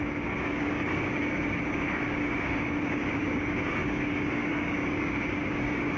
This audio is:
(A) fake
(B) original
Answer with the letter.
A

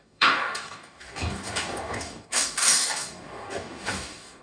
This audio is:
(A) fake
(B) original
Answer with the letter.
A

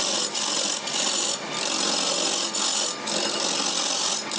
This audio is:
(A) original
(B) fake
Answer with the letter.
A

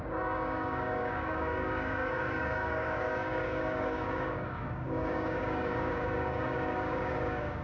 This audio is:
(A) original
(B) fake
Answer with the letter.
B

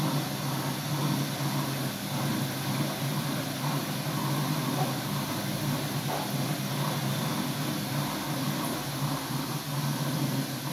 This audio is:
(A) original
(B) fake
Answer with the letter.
A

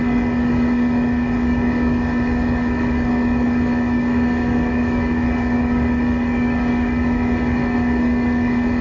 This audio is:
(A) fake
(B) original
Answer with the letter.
A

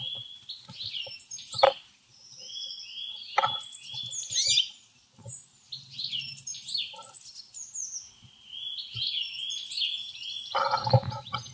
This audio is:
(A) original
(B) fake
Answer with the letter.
A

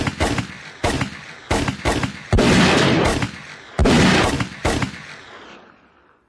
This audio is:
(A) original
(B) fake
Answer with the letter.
A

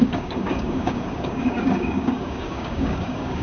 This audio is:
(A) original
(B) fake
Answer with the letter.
B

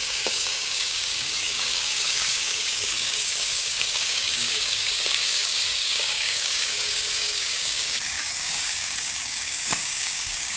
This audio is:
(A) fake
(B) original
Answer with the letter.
A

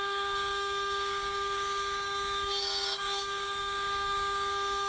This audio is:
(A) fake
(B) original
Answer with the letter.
A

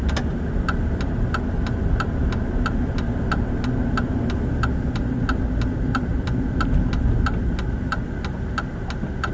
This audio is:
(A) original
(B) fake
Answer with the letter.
A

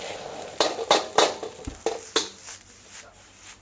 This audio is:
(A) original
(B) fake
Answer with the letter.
A